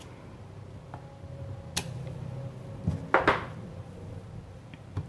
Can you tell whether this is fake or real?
real